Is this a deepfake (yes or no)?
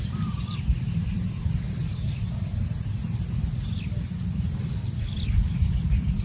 no